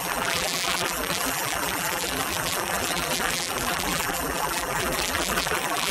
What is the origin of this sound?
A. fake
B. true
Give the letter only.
A